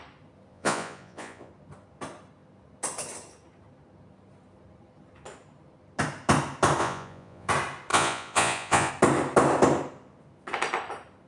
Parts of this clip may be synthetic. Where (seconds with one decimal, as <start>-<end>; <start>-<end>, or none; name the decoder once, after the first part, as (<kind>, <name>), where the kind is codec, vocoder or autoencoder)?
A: 0.5-1.5 (vocoder, Vocos); 6.8-7.5; 7.9-8.9